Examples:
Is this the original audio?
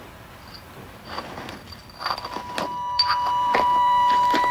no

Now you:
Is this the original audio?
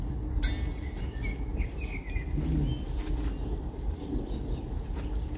yes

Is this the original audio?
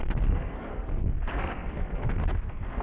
no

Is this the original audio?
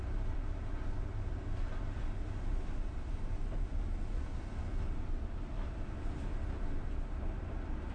yes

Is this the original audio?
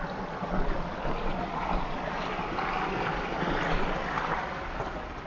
yes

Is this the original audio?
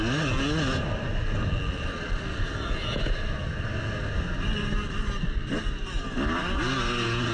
yes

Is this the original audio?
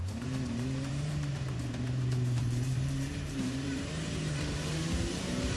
no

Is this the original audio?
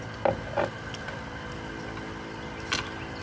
yes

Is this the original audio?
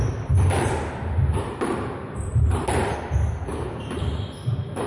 yes